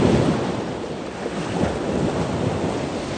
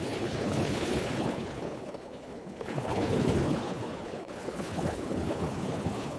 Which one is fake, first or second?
second